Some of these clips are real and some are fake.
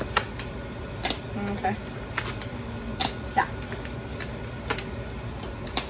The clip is real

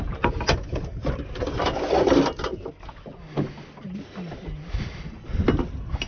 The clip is real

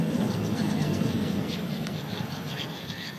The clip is fake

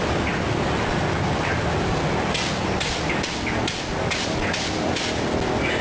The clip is real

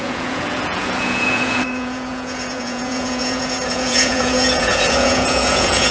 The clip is fake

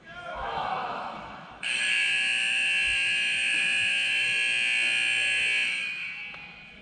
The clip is fake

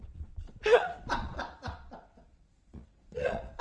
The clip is fake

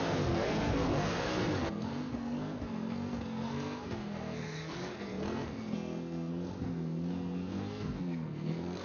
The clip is fake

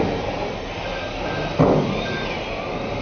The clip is real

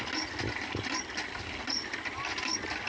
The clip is real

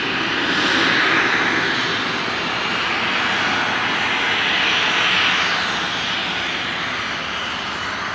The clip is real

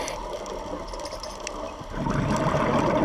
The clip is real